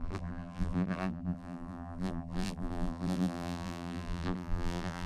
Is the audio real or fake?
fake